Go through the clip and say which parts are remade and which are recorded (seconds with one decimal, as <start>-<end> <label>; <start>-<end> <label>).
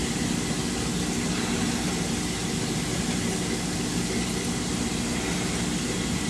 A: 0.0-0.6 remade; 0.6-3.9 recorded; 3.9-4.9 remade; 4.9-6.3 recorded